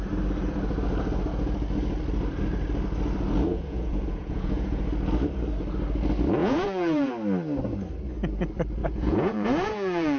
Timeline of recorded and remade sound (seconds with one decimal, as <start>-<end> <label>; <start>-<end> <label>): 0.0-3.5 recorded; 3.5-4.8 remade; 4.8-6.4 recorded; 6.4-7.1 remade; 7.1-8.8 recorded; 8.8-10.2 remade